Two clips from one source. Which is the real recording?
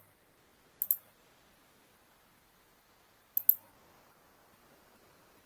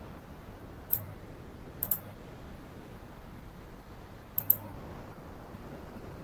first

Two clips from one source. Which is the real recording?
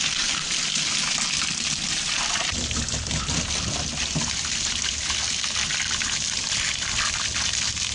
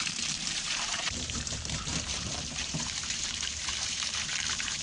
first